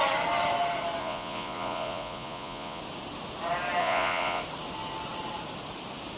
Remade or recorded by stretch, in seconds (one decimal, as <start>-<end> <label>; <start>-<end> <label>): 0.0-1.0 recorded; 1.0-2.8 remade; 2.8-3.8 recorded; 3.8-4.4 remade; 4.4-6.2 recorded